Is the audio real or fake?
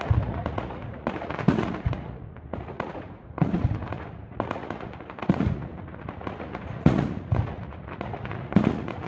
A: fake